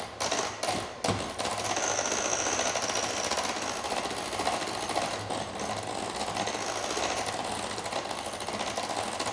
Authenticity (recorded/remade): recorded